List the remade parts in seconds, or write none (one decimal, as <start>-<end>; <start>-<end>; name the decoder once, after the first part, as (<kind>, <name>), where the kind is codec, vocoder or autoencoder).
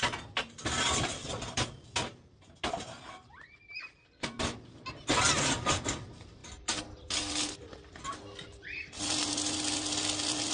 none